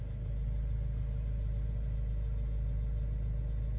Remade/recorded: recorded